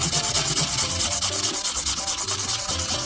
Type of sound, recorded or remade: remade